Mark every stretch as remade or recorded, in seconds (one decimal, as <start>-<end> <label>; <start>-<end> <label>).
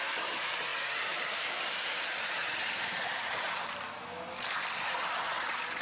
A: 0.0-2.4 recorded; 2.4-3.8 remade; 3.8-5.8 recorded